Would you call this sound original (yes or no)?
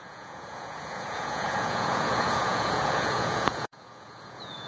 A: no